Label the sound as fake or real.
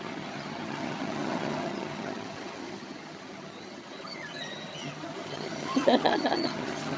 fake